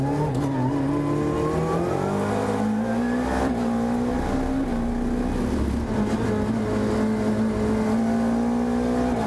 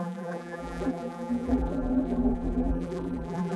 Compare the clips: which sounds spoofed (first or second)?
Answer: second